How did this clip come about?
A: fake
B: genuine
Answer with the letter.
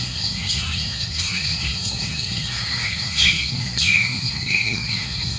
A